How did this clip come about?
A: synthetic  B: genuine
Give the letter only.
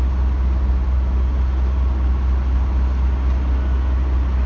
B